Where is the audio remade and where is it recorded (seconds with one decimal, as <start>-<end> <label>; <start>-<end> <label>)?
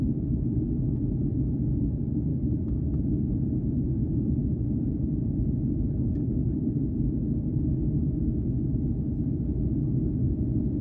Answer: 0.0-2.3 recorded; 2.3-3.1 remade; 3.1-10.8 recorded